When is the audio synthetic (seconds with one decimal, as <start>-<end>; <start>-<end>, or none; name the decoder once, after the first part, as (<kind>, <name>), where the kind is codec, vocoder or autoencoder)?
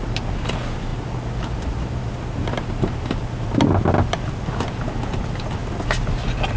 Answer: none